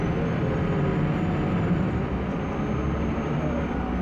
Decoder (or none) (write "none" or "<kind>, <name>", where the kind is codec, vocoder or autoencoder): none